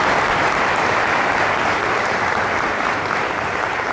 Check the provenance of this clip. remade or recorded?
remade